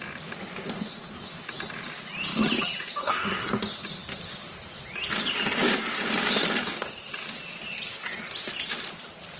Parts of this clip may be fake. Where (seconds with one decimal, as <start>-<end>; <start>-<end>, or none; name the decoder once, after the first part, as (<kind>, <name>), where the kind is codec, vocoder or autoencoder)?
3.0-3.5 (codec, SNAC)